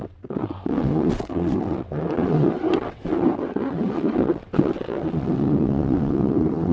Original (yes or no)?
no